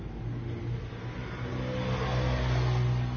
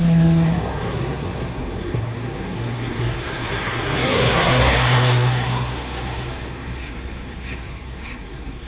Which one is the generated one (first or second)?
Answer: second